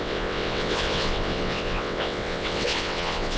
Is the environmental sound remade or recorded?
remade